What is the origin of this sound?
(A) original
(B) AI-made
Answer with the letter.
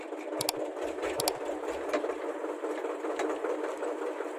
A